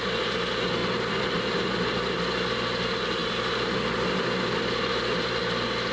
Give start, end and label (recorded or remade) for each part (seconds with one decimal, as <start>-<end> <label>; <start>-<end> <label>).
0.0-5.9 recorded